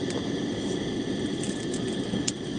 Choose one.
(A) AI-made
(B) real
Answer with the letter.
B